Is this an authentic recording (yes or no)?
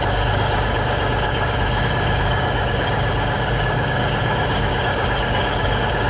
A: no